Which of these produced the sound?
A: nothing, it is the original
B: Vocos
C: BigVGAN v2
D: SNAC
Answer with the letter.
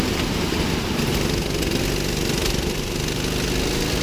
A